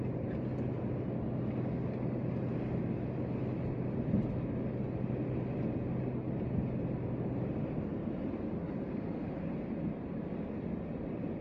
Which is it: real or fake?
real